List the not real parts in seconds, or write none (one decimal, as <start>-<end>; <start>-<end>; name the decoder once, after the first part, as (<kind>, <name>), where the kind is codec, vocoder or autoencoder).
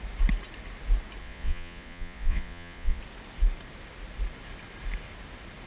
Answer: 1.2-3.0 (vocoder, Vocos)